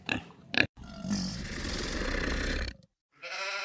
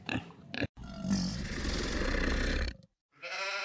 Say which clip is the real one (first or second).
second